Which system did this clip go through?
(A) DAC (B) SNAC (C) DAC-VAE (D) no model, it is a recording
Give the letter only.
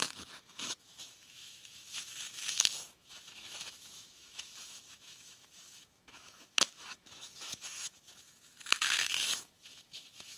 C